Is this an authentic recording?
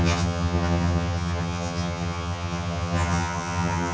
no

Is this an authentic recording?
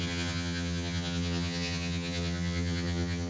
no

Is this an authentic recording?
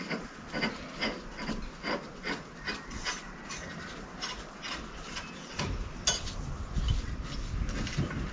yes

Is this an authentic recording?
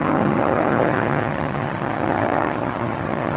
no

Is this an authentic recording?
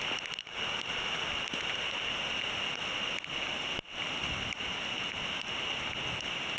yes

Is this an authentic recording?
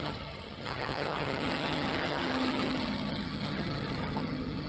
no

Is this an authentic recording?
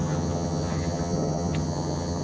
no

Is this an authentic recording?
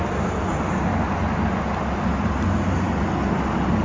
yes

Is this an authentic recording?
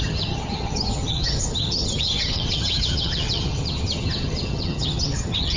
no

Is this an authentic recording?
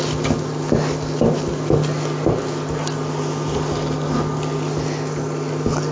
yes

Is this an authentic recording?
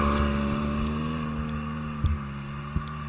yes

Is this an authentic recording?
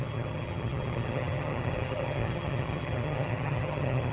no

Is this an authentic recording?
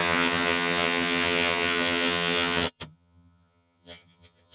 no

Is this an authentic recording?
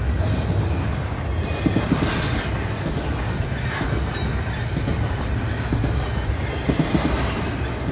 yes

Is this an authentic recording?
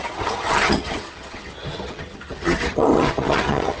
no